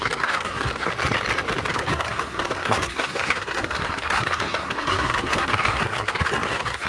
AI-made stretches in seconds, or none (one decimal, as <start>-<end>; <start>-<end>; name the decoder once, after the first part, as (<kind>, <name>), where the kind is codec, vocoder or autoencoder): 0.0-0.9 (codec, SNAC); 1.7-6.9